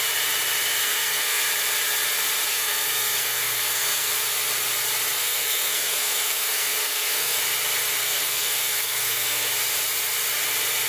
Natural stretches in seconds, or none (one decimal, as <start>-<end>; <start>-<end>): 0.0-0.8; 1.5-2.5; 4.1-5.2; 7.4-8.0; 9.5-10.9